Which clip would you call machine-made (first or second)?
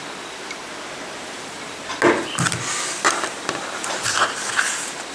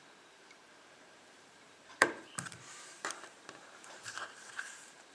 second